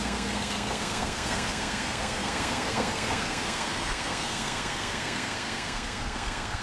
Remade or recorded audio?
remade